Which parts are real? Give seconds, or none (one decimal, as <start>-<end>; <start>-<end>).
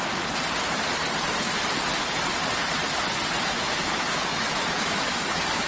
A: 0.0-3.4